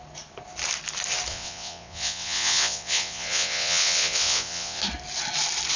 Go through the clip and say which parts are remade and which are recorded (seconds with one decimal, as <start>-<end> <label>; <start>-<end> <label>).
0.0-1.3 recorded; 1.3-4.8 remade; 4.8-5.8 recorded